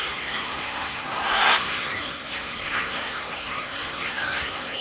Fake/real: fake